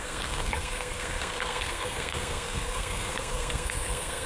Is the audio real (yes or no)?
no